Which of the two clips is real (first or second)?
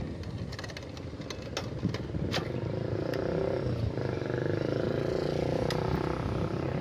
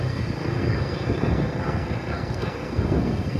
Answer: first